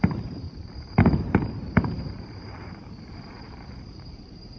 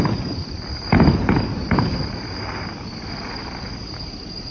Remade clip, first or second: first